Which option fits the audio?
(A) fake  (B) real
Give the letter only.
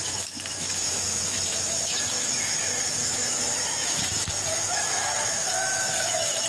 A